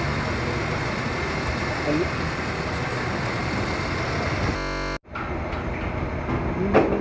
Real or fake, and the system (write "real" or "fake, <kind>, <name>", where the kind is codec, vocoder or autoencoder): real